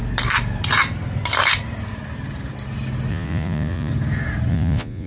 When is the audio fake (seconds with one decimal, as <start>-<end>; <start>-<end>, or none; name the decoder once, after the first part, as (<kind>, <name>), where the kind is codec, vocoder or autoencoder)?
3.1-3.9 (vocoder, Vocos); 4.5-5.1